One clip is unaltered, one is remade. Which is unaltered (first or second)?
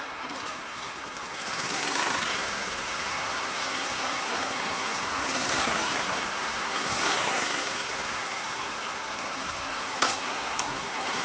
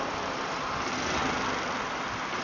second